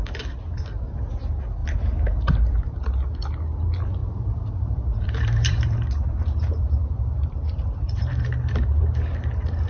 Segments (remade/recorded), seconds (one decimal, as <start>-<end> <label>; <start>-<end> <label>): 0.0-1.6 recorded; 1.6-2.7 remade; 2.7-4.0 recorded; 4.0-8.8 remade; 8.8-9.7 recorded